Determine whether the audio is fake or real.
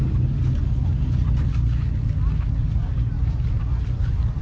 real